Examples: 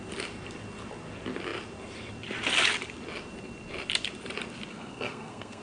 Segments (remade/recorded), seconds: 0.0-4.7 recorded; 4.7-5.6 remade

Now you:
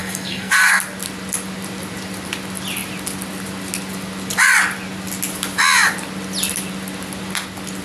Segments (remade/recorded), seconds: 0.0-0.8 remade; 0.8-7.8 recorded

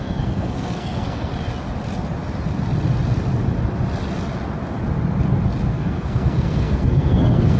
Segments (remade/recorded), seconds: 0.0-1.3 remade; 1.3-5.7 recorded; 5.7-7.6 remade

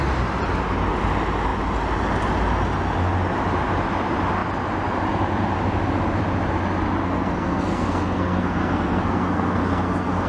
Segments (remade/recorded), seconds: 0.0-7.0 recorded; 7.0-10.3 remade